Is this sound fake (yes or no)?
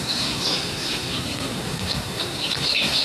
yes